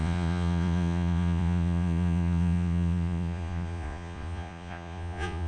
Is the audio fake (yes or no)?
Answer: yes